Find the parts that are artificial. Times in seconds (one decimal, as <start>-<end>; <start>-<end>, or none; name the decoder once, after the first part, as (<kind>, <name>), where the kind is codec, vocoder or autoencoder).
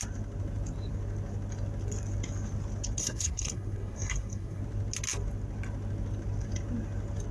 3.0-4.6 (codec, SNAC)